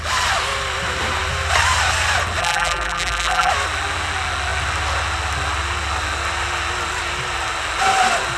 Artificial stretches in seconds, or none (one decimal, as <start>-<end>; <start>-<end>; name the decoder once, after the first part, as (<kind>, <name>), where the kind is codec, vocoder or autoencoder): 2.4-3.5 (vocoder, BigVGAN v2)